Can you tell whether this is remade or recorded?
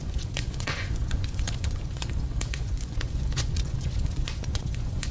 remade